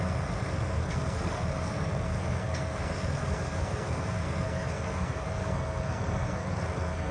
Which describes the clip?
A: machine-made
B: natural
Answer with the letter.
A